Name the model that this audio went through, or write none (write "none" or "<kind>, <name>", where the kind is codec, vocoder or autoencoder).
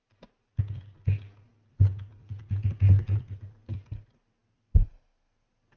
none